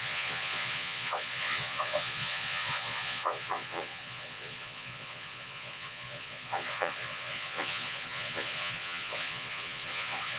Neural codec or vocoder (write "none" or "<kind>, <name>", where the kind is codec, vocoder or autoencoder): vocoder, Vocos